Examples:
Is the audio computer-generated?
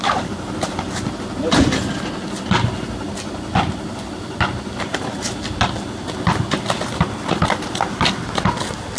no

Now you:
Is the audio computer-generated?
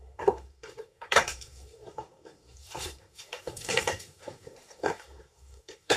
yes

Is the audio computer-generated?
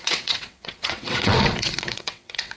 yes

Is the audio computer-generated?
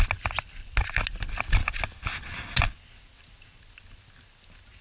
no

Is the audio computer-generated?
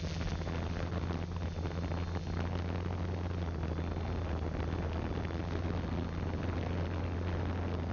no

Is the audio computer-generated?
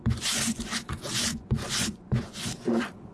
yes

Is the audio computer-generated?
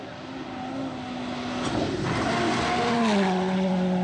no